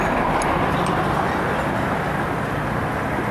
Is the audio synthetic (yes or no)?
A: yes